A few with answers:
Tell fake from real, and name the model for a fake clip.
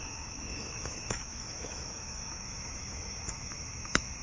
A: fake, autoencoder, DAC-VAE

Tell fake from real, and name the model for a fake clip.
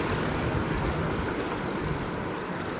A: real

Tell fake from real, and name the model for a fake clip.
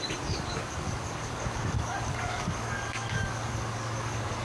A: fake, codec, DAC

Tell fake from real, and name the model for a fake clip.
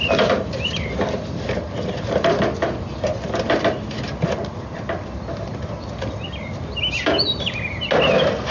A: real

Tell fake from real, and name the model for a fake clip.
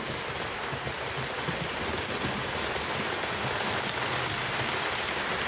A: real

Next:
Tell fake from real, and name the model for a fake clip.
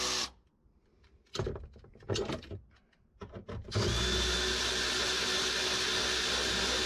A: real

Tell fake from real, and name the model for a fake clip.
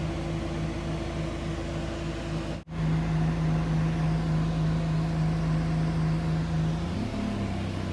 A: real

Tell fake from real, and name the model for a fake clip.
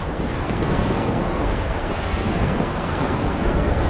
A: fake, codec, SNAC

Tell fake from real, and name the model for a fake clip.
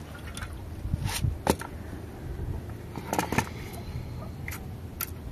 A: real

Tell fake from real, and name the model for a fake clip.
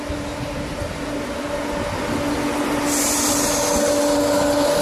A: real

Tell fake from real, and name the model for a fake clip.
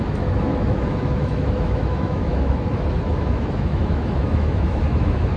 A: fake, autoencoder, DAC-VAE